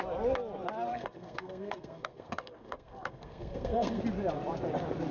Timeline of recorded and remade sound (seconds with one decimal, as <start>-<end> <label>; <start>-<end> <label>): 0.0-0.9 recorded; 0.9-4.0 remade; 4.0-5.1 recorded